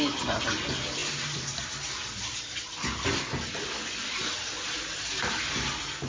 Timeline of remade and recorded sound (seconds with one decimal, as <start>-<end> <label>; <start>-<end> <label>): 0.0-6.1 recorded